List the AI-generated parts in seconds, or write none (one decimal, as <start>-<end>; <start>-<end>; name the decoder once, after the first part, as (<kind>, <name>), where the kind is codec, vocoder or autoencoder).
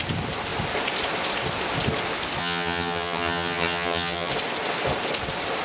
2.4-4.3 (vocoder, HiFi-GAN)